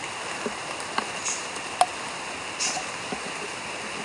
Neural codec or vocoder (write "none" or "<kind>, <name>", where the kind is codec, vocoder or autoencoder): none